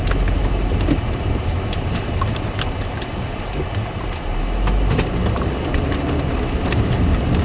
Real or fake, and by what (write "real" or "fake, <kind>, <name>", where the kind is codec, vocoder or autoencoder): real